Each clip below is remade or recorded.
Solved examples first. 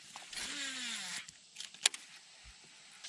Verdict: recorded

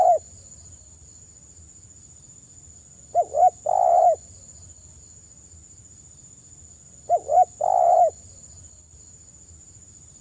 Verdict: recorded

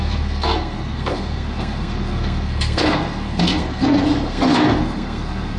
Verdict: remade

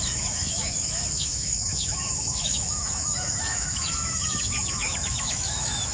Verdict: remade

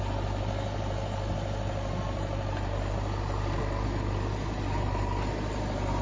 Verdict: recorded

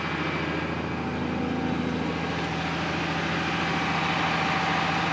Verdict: recorded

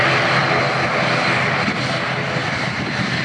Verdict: recorded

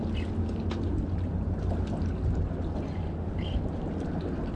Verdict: recorded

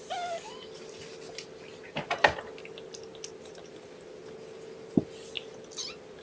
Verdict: recorded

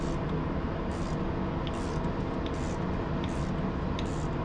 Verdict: recorded